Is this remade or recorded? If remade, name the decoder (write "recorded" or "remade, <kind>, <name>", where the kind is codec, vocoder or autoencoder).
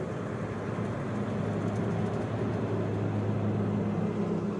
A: recorded